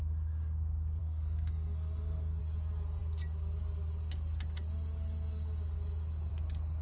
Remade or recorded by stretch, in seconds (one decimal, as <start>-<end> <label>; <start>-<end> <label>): 0.0-1.0 recorded; 1.0-2.4 remade; 2.4-6.8 recorded